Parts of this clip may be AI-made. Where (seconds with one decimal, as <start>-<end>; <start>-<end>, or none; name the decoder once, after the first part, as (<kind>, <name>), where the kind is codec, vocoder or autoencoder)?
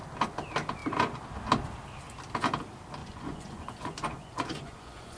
3.0-5.2 (vocoder, Vocos)